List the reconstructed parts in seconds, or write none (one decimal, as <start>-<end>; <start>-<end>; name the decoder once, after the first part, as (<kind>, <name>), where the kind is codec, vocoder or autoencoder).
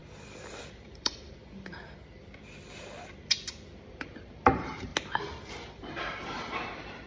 0.5-1.4 (vocoder, BigVGAN v2); 3.9-4.9; 5.7-7.1